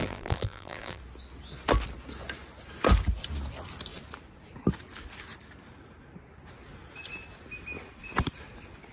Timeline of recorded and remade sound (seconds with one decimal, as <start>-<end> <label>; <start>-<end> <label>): 0.0-1.0 remade; 1.0-8.9 recorded